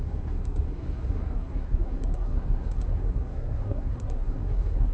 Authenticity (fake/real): fake